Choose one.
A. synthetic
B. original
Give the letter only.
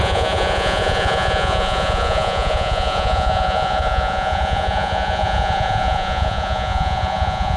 A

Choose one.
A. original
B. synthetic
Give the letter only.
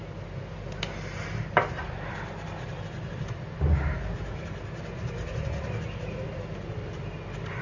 B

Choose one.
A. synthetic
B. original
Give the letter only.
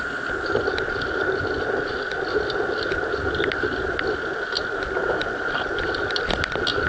B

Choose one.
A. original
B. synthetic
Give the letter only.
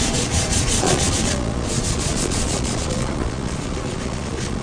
B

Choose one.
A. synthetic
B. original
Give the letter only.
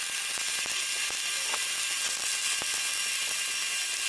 B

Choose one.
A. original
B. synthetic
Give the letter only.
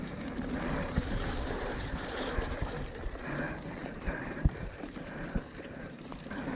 B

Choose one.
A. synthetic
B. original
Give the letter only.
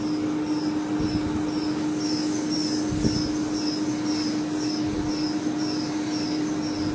B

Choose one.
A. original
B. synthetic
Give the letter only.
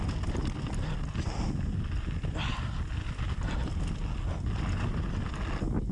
A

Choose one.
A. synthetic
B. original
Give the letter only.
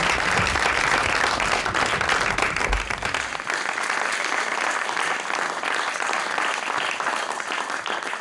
B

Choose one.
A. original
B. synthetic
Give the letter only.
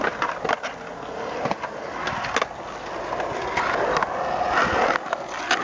A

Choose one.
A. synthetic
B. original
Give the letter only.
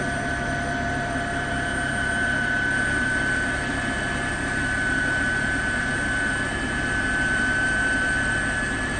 A